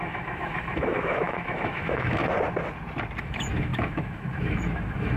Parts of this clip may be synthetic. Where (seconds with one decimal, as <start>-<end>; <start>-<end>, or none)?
0.0-2.2; 3.2-5.2